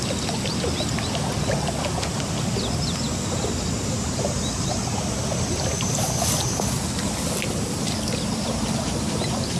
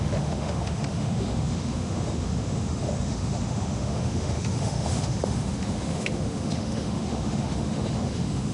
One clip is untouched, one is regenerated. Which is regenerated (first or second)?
second